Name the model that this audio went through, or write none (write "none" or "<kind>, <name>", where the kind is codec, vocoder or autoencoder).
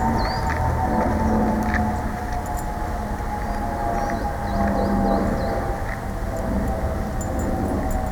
none